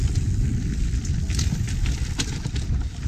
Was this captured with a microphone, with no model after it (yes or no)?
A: yes